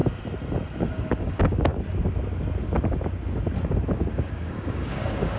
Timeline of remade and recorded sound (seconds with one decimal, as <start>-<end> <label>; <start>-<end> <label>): 0.0-0.8 recorded; 0.8-1.7 remade; 1.7-4.1 recorded; 4.1-5.4 remade